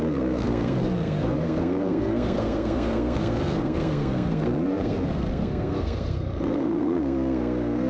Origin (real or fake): fake